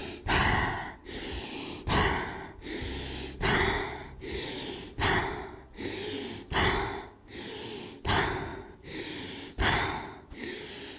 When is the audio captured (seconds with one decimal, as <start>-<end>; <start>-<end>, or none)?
0.0-4.0; 5.2-8.5; 10.6-11.0